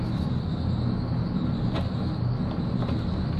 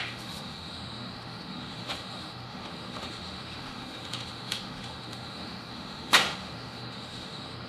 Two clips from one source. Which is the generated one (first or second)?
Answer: second